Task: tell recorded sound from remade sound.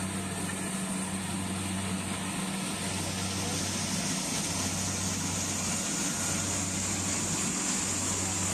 recorded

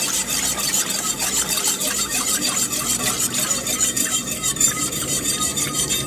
remade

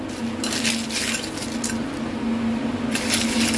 recorded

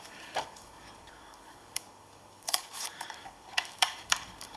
remade